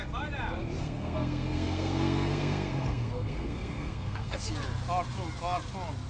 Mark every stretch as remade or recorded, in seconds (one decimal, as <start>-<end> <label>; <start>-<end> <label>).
0.0-0.8 recorded; 0.8-4.5 remade; 4.5-6.1 recorded